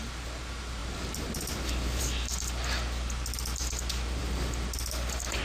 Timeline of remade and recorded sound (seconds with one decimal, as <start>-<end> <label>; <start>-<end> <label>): 0.0-5.4 recorded